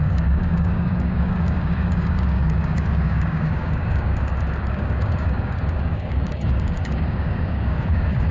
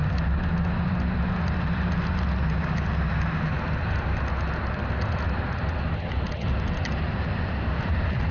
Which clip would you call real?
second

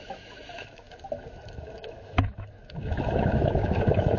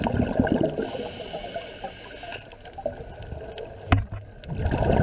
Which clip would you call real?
second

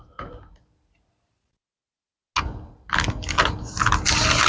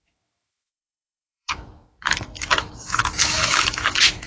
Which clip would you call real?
first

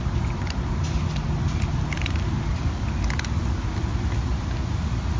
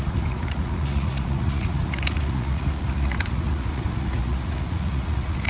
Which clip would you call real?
first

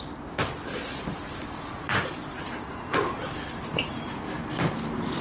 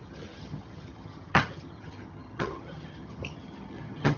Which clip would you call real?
first